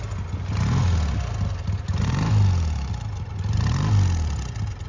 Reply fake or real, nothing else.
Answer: real